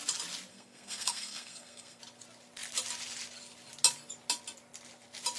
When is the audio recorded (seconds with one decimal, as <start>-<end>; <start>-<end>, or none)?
0.0-0.5; 2.0-5.4